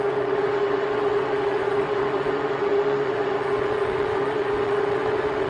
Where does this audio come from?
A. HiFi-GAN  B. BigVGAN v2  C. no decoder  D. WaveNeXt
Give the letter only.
D